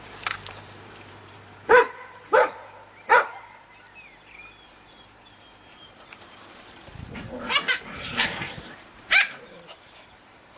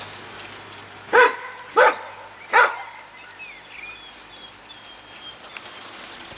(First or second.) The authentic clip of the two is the second